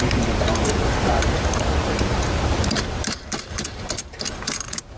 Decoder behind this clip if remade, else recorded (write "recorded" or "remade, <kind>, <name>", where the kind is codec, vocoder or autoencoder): remade, vocoder, BigVGAN v2